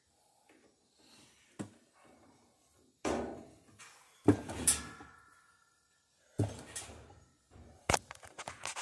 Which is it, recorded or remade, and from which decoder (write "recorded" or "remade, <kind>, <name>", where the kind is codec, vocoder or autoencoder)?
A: recorded